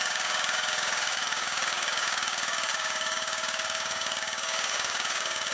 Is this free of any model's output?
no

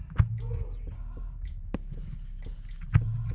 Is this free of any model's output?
yes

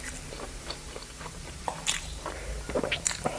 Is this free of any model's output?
no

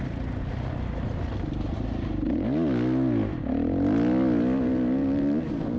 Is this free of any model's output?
yes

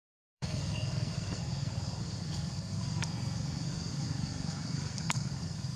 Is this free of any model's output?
no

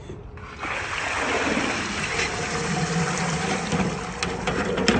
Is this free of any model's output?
yes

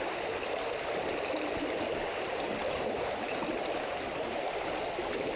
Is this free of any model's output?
yes